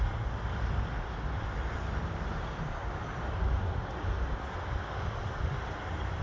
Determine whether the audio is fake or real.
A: real